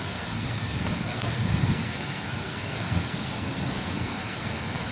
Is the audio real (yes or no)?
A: no